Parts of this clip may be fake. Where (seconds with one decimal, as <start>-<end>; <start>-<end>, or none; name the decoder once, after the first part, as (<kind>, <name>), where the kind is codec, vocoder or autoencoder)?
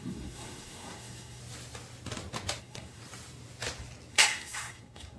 0.0-1.4 (codec, SNAC); 2.6-3.0; 4.1-5.2